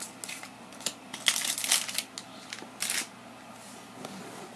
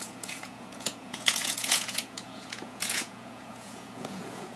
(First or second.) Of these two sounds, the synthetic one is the second